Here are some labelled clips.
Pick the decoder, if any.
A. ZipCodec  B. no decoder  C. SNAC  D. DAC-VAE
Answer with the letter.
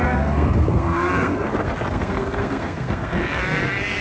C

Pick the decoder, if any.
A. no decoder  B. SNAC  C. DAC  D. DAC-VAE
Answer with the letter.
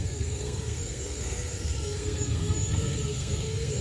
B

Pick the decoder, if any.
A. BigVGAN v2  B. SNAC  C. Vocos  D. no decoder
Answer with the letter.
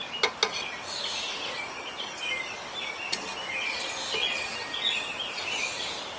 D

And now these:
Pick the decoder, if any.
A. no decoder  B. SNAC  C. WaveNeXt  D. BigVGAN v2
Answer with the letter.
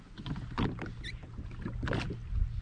A